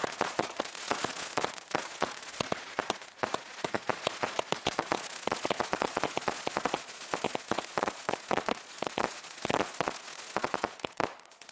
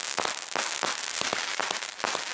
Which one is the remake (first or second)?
first